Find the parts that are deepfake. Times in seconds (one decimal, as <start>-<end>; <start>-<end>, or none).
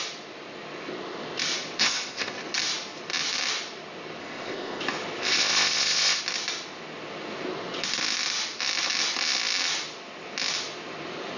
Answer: 1.8-2.3; 4.2-4.8; 5.2-6.2